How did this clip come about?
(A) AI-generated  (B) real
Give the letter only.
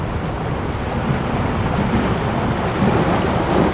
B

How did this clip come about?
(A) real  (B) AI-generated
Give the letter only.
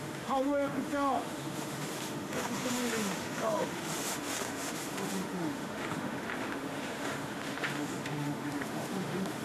B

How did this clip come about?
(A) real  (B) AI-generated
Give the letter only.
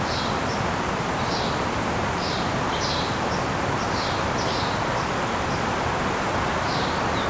A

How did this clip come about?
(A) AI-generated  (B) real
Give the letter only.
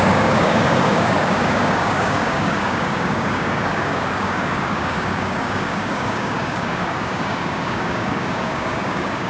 A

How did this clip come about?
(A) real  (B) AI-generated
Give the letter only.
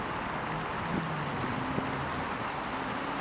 A